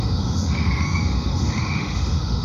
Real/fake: fake